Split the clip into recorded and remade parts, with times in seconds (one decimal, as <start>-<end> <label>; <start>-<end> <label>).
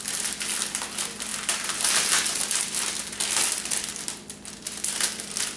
0.0-5.6 recorded